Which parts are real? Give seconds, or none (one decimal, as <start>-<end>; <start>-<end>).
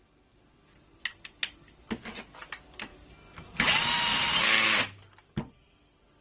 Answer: 0.0-6.2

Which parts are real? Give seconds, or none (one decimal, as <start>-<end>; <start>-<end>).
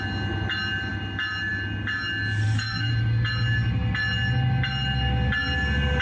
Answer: 0.0-2.4; 2.9-6.0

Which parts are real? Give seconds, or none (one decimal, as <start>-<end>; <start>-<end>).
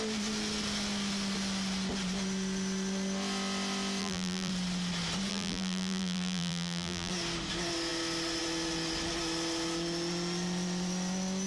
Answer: 0.0-4.0; 4.5-5.3; 7.1-11.5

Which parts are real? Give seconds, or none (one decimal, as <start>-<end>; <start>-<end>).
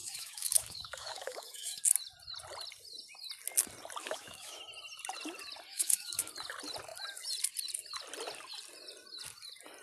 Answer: 1.8-4.0; 4.6-5.7; 6.3-9.8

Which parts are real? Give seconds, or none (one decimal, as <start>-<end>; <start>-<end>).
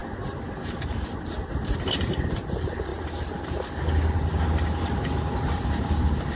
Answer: 0.5-6.4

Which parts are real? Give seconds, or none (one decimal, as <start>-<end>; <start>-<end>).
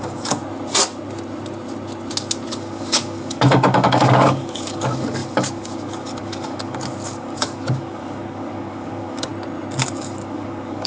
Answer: 0.4-2.5; 9.3-9.8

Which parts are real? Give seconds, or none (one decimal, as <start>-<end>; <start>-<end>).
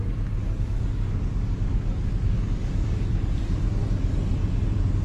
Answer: 0.0-0.4; 3.4-5.0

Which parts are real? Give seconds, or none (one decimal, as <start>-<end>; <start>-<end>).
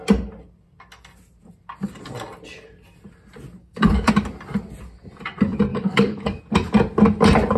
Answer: 0.0-3.6; 4.1-5.7; 6.4-7.6